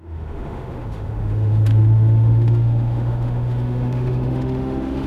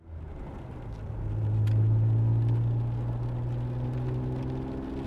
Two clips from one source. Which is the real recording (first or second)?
second